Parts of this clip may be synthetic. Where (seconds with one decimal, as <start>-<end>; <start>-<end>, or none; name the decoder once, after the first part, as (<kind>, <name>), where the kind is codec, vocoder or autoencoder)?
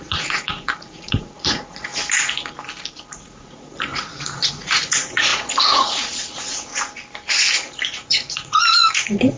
0.0-1.9 (vocoder, Vocos); 3.1-6.7; 7.5-9.4